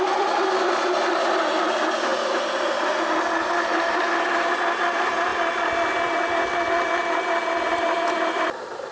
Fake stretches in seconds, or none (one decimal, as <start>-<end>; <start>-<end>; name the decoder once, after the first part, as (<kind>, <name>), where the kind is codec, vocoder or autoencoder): 0.0-5.3 (vocoder, BigVGAN v2); 7.7-8.9